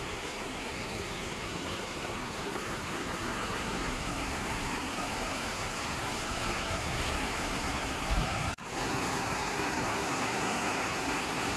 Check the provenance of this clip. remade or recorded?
remade